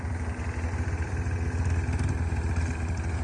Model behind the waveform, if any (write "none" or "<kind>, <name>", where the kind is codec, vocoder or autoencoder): none